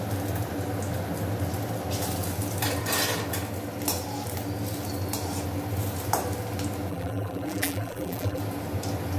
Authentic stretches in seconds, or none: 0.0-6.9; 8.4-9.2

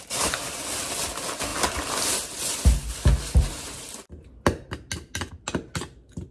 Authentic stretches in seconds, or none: 0.0-6.3

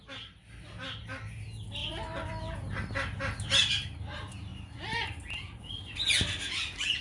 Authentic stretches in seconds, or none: 0.0-1.8; 2.3-4.5; 5.7-7.0

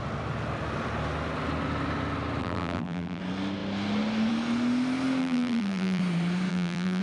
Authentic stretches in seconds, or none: 0.0-2.4; 3.2-5.2; 6.0-6.5

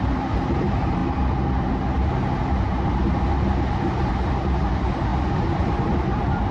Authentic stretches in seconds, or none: 1.0-3.3